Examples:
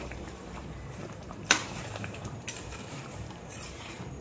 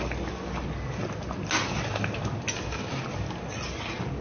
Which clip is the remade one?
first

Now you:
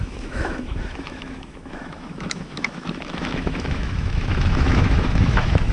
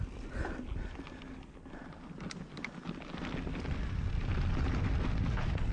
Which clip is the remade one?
first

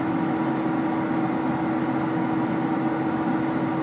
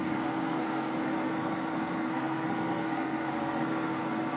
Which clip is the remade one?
second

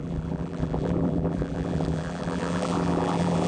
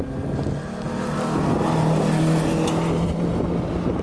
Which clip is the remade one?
first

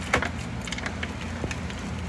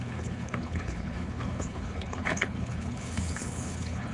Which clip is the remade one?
second